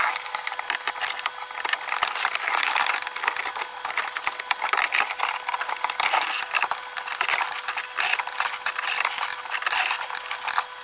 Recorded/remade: recorded